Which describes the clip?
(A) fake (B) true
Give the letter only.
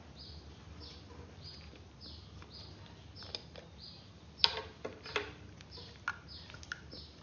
B